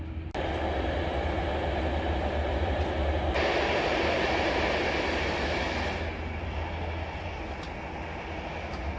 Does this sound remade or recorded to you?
recorded